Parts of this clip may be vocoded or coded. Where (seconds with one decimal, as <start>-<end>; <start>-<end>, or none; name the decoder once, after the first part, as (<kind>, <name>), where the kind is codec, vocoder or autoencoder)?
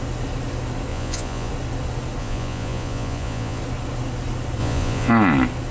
0.9-1.5 (vocoder, Vocos); 2.2-3.6; 4.6-5.1